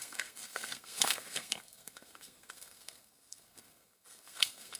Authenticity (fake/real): fake